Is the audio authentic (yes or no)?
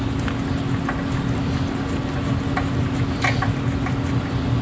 yes